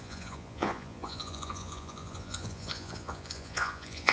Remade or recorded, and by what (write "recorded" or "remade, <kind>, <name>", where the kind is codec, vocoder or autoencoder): remade, vocoder, Vocos